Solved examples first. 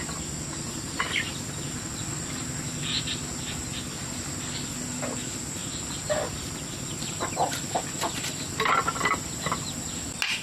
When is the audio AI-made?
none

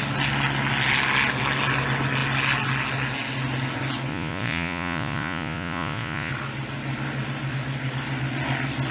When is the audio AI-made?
4.1-6.3 (vocoder, Vocos)

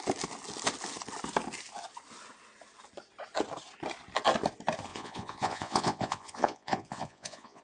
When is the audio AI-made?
4.9-7.6 (vocoder, Vocos)

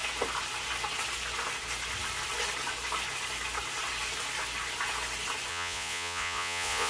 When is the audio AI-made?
5.5-6.9 (vocoder, Vocos)

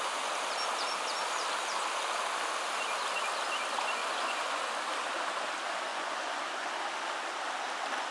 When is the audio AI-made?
4.0-4.6 (vocoder, Vocos); 5.9-6.7

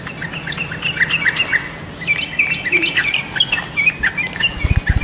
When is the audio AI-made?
none

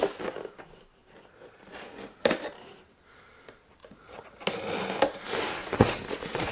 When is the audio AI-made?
3.8-4.4 (vocoder, Vocos); 5.6-6.5